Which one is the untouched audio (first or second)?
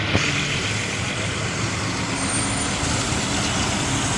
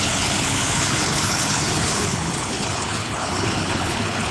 first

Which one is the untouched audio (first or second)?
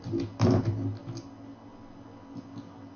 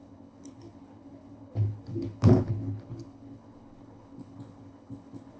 first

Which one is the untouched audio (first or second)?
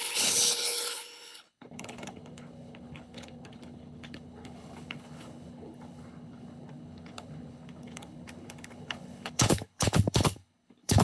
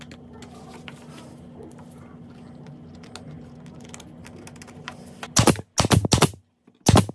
second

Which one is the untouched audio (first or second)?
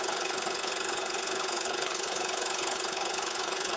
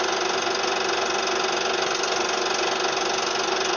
second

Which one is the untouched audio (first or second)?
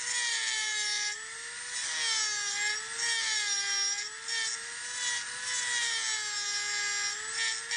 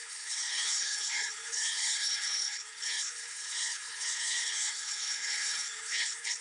first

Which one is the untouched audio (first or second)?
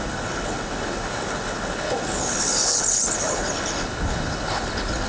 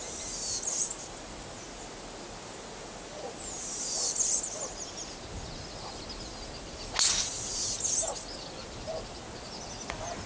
second